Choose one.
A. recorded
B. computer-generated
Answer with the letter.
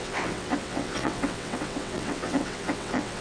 B